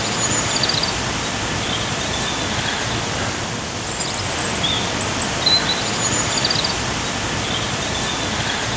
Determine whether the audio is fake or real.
real